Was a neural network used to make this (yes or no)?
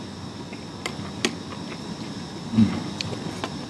no